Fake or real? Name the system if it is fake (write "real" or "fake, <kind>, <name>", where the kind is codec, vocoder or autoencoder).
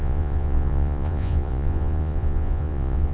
fake, vocoder, Vocos